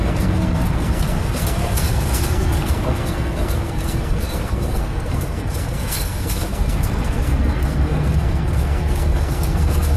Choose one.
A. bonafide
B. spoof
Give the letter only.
B